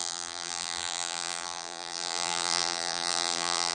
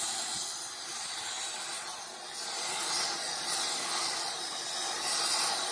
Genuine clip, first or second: second